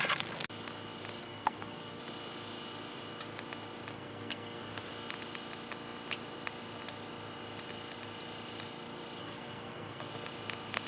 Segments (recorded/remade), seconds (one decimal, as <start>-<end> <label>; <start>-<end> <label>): 0.0-1.2 recorded; 1.2-2.0 remade; 2.0-3.9 recorded; 3.9-4.9 remade; 4.9-9.2 recorded; 9.2-10.1 remade; 10.1-10.9 recorded